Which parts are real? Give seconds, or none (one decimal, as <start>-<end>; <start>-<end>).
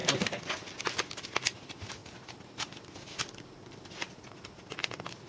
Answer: 0.0-5.3